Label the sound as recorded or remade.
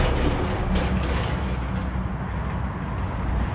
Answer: recorded